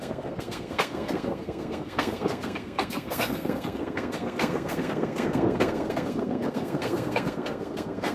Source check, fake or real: fake